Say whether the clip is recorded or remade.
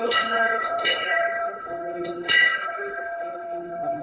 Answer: remade